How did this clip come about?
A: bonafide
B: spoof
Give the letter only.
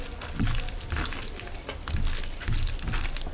A